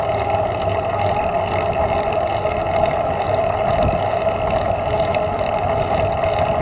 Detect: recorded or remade recorded